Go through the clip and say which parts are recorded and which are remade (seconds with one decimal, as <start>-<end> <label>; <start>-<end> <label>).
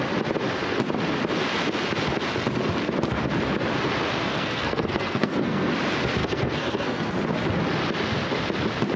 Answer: 0.0-4.3 recorded; 4.3-5.7 remade; 5.7-6.2 recorded; 6.2-7.1 remade; 7.1-9.0 recorded